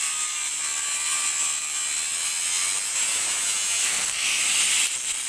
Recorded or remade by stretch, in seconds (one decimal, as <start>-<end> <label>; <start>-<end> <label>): 0.0-3.8 recorded; 3.8-4.4 remade; 4.4-5.3 recorded